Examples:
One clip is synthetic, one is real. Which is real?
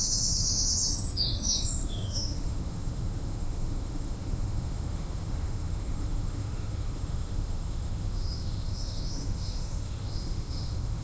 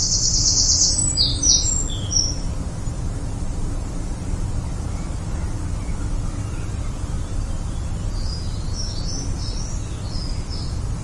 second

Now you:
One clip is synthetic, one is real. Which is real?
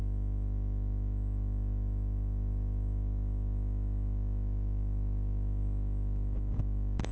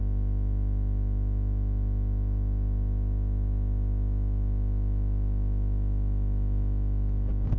second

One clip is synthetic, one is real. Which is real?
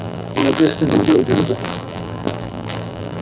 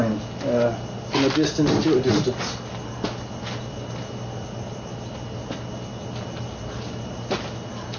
second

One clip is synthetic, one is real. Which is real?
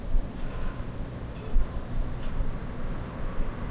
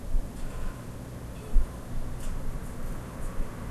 second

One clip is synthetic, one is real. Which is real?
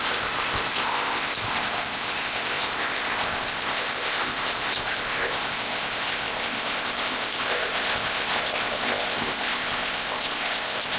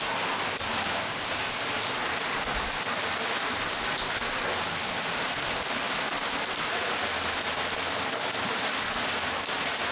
second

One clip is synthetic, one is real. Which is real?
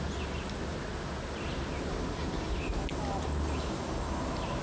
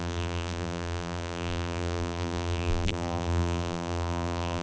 first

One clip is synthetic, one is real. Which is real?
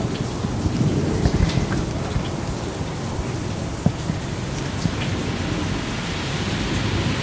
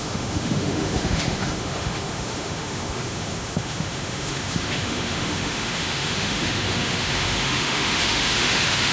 first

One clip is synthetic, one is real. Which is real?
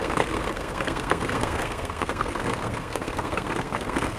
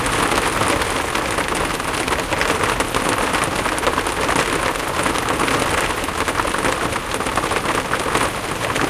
second